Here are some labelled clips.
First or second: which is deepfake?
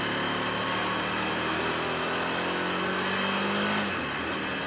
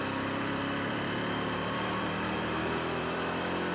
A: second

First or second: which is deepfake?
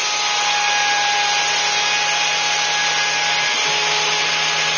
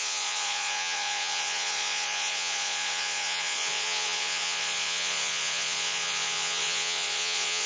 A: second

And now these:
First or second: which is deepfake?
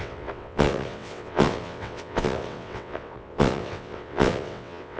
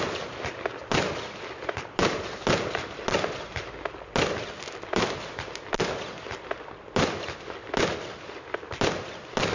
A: first